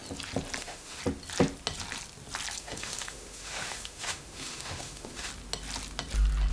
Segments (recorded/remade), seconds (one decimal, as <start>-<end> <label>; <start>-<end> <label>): 0.0-0.6 recorded; 0.6-1.0 remade; 1.0-2.6 recorded; 2.6-5.3 remade; 5.3-6.5 recorded